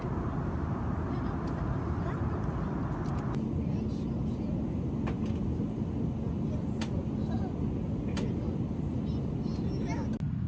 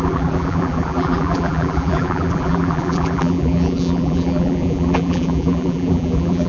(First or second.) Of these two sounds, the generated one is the second